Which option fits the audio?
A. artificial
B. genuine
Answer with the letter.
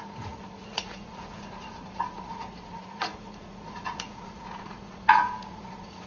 A